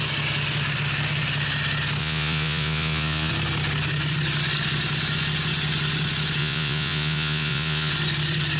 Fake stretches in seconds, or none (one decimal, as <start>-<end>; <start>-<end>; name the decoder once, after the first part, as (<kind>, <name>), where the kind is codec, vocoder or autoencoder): 2.0-3.3 (vocoder, Vocos); 6.4-7.9